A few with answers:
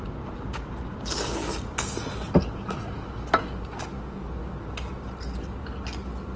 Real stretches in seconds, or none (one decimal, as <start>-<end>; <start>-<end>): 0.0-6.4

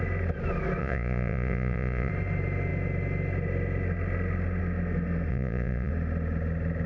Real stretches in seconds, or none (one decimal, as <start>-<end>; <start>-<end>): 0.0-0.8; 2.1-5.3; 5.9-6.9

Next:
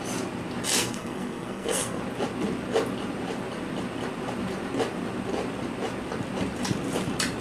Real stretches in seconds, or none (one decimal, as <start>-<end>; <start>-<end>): 0.0-0.8; 2.0-7.4

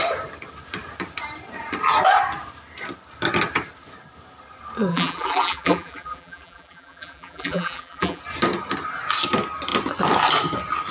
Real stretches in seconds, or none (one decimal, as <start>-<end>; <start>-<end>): 0.0-4.9; 8.2-10.9

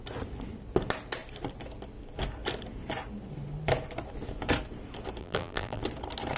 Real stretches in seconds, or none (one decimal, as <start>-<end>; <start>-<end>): 0.0-5.2; 5.8-6.4

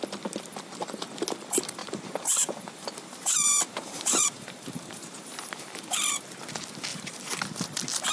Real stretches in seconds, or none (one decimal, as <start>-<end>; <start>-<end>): 0.0-1.8; 5.8-6.9; 7.4-8.1